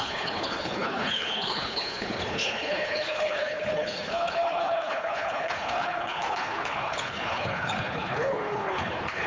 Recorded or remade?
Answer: remade